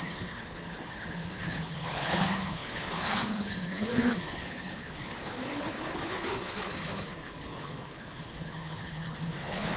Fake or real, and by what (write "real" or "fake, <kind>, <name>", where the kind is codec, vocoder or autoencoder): fake, codec, HILCodec